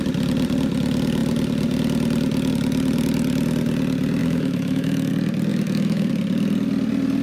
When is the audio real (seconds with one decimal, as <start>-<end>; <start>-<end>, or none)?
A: 0.0-4.2; 5.1-5.5; 6.1-7.2